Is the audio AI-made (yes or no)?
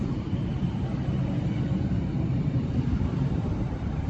yes